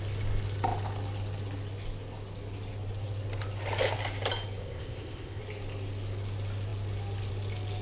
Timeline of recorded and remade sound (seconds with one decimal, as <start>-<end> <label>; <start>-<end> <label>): 0.0-4.6 recorded; 4.6-5.4 remade; 5.4-7.8 recorded